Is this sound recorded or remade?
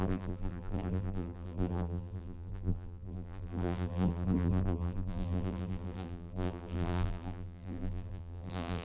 remade